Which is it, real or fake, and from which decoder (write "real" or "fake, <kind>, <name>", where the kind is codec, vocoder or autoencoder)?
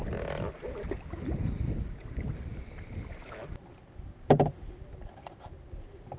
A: real